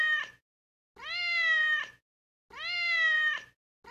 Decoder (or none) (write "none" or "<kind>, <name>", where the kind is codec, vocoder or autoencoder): none